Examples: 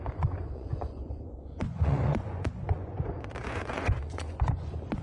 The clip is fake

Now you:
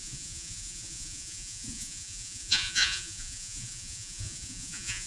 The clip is fake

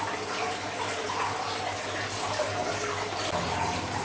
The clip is real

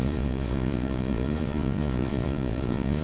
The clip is fake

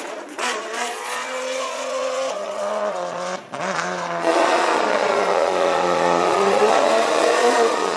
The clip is fake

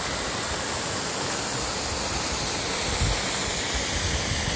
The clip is real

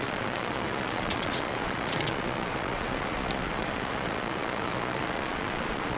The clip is fake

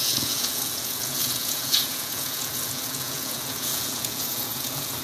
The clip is fake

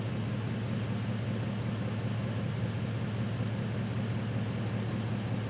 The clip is real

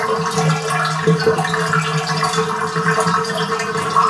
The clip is real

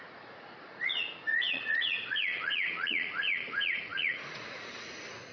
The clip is fake